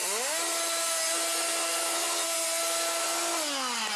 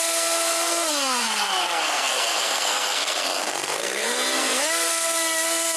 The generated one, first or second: second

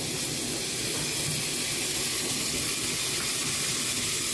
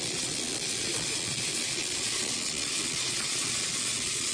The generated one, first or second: second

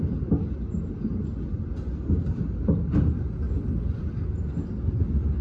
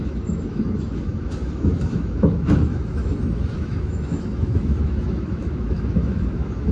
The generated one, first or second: second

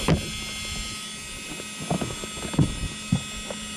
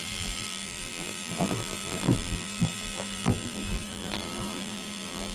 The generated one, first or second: second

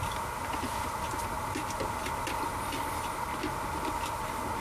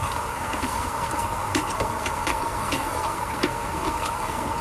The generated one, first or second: second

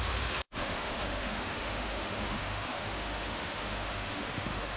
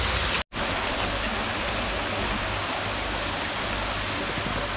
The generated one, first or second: first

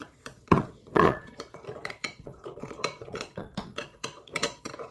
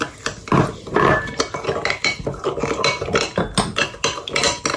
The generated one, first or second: first